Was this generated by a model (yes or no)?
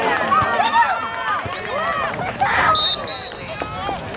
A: no